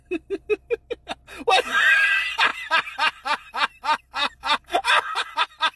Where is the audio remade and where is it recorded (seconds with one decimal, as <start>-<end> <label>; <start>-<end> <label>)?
0.0-5.8 recorded